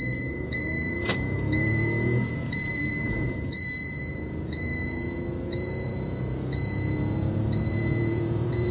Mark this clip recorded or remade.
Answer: remade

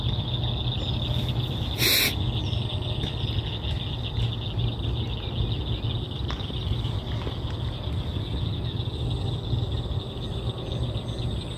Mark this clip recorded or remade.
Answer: recorded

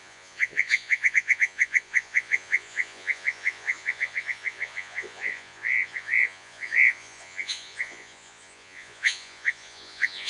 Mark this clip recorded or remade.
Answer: remade